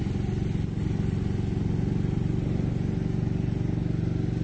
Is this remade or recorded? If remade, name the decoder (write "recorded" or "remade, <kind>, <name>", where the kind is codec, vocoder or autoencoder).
recorded